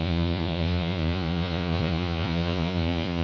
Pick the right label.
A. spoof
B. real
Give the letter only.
A